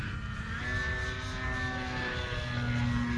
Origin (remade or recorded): recorded